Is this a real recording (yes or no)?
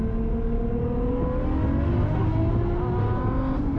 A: yes